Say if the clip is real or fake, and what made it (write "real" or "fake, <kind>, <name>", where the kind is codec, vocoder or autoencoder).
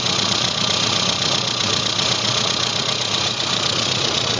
fake, vocoder, Vocos